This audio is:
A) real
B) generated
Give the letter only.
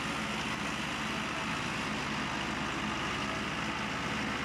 A